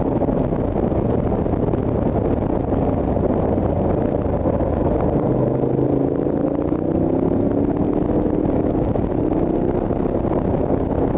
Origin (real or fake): real